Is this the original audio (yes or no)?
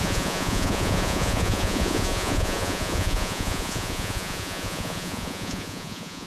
no